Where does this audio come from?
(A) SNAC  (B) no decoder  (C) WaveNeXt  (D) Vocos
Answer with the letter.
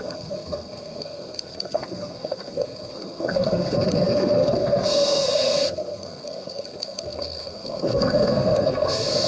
A